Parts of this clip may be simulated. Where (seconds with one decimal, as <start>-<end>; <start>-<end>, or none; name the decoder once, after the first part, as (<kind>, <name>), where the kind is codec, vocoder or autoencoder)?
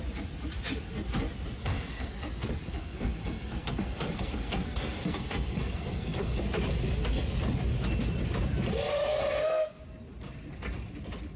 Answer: 1.6-6.4 (codec, SNAC); 8.9-9.8